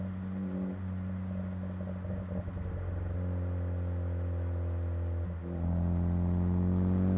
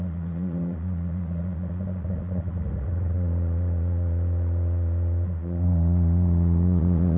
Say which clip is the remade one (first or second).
second